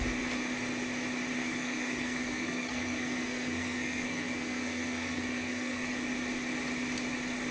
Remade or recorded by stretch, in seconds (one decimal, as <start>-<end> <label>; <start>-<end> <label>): 0.0-1.4 recorded; 1.4-5.9 remade; 5.9-7.5 recorded